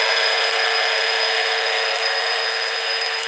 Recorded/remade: remade